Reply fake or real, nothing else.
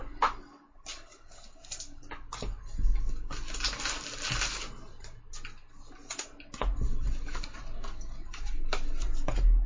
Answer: real